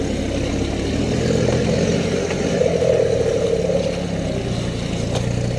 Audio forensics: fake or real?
real